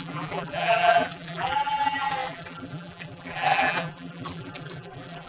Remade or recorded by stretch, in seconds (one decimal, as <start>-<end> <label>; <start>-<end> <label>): 0.0-5.3 remade